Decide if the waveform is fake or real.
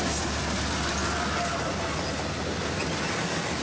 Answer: real